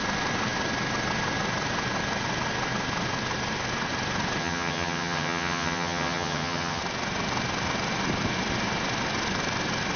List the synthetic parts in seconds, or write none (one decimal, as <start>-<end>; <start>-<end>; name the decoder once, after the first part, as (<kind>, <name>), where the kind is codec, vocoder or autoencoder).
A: 4.4-6.8 (vocoder, HiFi-GAN)